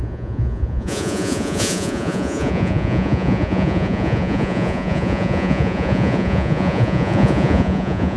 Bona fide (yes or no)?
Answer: no